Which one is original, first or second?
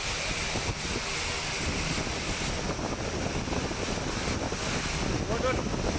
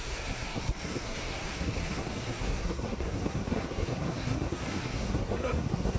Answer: first